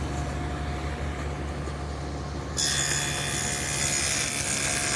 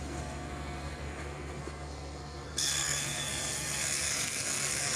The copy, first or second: second